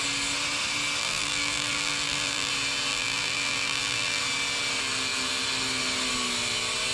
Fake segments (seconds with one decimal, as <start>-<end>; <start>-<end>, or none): 1.0-2.5; 2.9-4.2